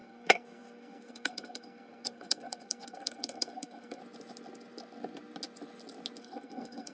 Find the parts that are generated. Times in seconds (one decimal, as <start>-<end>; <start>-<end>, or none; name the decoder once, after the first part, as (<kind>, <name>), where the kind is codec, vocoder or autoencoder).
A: 0.0-4.0 (codec, SNAC); 6.2-6.9

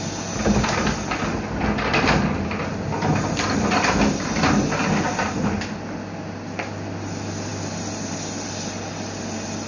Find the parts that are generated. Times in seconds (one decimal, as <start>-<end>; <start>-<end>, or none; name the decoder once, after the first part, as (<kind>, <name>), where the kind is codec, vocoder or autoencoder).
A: none

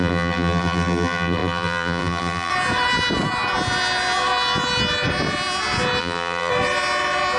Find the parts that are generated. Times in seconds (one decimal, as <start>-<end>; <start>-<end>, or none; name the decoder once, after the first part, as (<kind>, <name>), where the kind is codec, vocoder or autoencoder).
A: 0.0-2.5 (vocoder, BigVGAN v2); 6.0-6.5

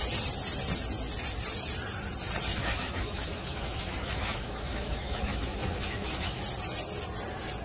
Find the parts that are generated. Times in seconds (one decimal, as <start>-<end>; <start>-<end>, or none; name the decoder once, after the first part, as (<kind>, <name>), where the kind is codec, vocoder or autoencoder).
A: 2.5-6.4 (autoencoder, DAC-VAE)

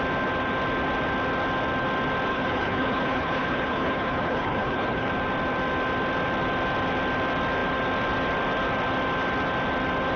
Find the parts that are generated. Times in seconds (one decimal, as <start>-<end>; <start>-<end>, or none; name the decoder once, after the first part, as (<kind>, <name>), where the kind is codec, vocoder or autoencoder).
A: 2.3-5.1 (codec, HILCodec)

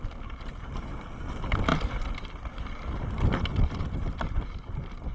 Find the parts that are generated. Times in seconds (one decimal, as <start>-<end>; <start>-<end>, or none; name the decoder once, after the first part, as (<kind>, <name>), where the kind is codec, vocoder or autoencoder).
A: none

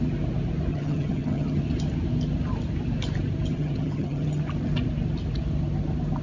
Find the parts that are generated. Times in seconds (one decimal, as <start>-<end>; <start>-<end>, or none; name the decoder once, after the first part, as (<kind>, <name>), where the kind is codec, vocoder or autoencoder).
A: 0.7-1.6 (vocoder, HiFi-GAN); 3.5-4.4

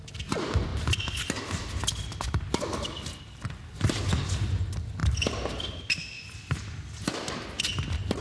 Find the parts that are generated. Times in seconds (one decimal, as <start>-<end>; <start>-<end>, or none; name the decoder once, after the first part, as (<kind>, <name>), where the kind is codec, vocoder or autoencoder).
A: none